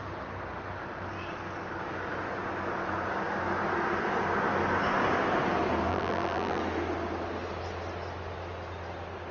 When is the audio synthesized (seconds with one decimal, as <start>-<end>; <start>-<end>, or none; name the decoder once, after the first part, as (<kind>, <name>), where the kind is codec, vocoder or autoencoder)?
5.9-6.6 (vocoder, BigVGAN v2)